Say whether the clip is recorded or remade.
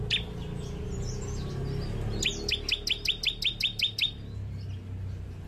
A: recorded